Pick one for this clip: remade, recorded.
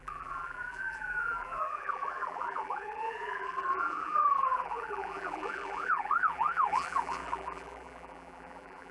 remade